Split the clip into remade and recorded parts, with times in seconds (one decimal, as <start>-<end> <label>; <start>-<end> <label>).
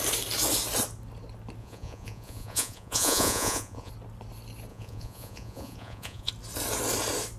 0.0-1.6 recorded; 1.6-3.9 remade; 3.9-4.7 recorded; 4.7-6.3 remade; 6.3-7.4 recorded